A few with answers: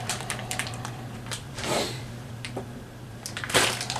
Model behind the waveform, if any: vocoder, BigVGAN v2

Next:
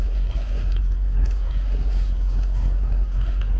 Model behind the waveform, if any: codec, SNAC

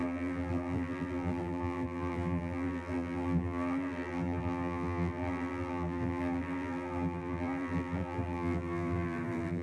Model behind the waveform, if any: vocoder, BigVGAN v2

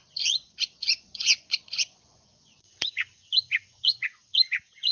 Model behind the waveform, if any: vocoder, Vocos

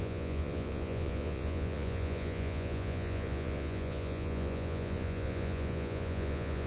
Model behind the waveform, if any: vocoder, Vocos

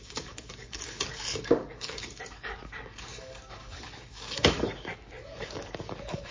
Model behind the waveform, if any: codec, DAC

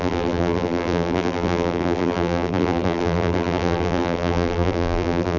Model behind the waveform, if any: vocoder, BigVGAN v2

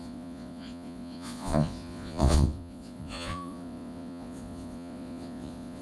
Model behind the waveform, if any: vocoder, Vocos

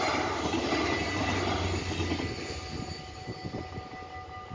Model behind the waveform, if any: none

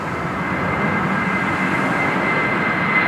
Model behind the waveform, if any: none